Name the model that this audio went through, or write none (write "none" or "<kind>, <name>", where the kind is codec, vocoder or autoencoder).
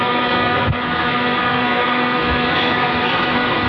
codec, SNAC